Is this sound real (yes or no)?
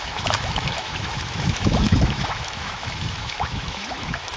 no